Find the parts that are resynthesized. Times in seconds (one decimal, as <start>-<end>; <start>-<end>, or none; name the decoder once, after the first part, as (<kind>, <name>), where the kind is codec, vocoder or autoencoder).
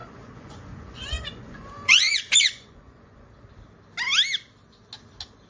0.0-3.3 (vocoder, Vocos)